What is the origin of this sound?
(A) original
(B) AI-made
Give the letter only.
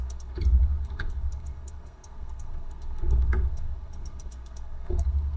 B